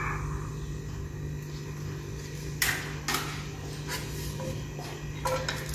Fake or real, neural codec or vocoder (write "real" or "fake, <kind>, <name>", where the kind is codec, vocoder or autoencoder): real